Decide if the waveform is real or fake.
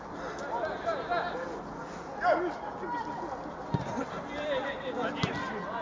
real